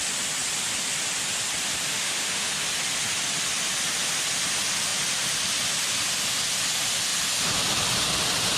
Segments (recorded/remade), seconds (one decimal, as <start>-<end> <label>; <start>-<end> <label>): 0.0-1.9 recorded; 1.9-2.5 remade; 2.5-8.6 recorded